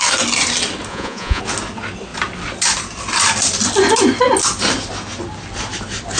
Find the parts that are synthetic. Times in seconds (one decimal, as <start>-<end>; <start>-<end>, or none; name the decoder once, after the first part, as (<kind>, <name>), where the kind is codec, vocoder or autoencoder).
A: 0.9-1.4 (vocoder, Vocos)